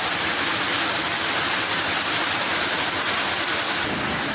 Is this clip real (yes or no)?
yes